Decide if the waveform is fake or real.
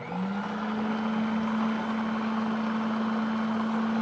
real